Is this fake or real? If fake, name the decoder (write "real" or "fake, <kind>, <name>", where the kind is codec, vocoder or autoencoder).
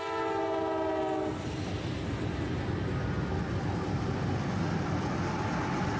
real